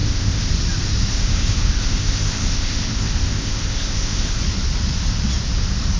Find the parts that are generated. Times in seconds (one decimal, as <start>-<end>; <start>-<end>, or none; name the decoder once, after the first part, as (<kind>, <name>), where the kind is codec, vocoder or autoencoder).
0.0-0.5 (codec, ZipCodec); 1.1-4.4